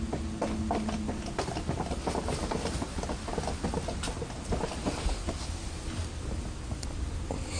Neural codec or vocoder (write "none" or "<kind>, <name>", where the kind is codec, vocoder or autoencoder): none